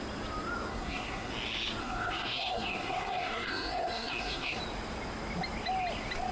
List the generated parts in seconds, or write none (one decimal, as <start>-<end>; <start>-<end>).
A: 0.7-1.3; 1.8-4.6

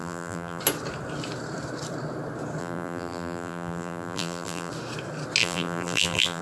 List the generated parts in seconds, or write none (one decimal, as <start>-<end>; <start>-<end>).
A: 0.0-0.6; 2.6-4.7; 5.4-6.4